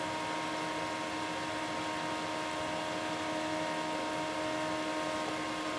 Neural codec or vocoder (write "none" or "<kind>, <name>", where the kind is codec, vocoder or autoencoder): none